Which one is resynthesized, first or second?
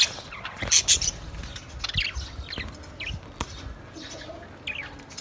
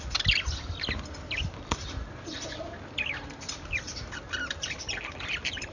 second